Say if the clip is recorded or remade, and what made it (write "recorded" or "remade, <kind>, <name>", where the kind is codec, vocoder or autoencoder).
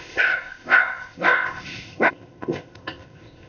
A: remade, codec, ZipCodec